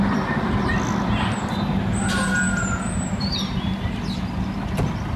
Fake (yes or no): no